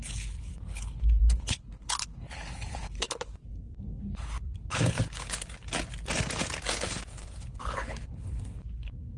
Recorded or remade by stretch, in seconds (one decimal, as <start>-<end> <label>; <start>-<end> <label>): 0.0-3.4 remade; 3.4-4.0 recorded; 4.0-5.5 remade; 5.5-6.8 recorded; 6.8-9.2 remade